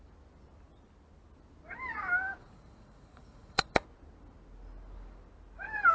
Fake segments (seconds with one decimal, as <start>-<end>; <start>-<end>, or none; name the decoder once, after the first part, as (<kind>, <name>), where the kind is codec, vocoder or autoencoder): 2.4-3.8 (vocoder, Vocos)